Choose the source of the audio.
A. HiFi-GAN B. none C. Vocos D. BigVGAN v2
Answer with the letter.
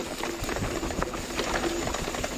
B